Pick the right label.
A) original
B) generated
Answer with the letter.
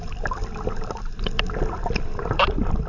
B